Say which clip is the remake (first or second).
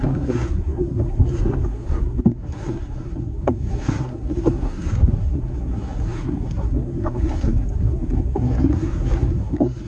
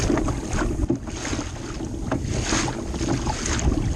first